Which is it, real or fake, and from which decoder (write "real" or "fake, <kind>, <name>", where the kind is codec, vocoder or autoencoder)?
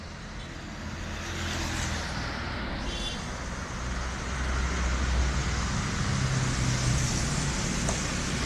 real